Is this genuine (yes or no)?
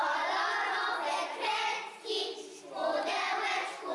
yes